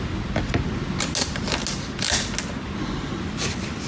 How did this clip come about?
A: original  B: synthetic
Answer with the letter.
A